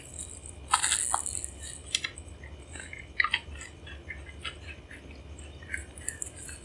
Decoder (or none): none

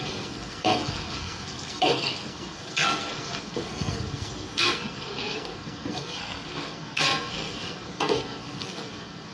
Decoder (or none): codec, SNAC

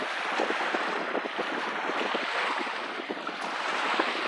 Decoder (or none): none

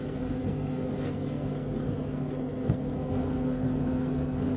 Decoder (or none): codec, SNAC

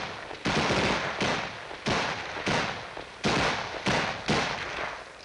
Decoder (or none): none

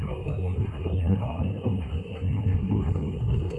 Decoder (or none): codec, SNAC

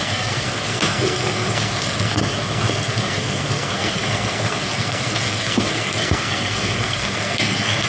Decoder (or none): codec, SNAC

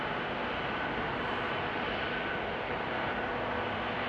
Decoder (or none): none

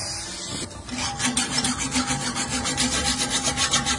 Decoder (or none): none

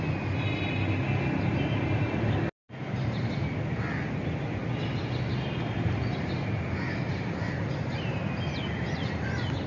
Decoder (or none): none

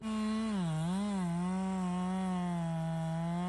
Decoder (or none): none